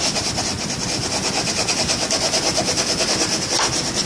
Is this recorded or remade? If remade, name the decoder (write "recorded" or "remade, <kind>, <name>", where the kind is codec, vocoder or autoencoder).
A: recorded